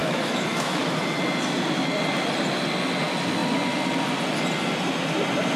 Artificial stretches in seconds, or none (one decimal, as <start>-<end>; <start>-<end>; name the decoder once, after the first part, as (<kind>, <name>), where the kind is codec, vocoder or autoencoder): 0.0-0.8 (autoencoder, DAC-VAE)